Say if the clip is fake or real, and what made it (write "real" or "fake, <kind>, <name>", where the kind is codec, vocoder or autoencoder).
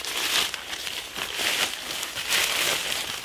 real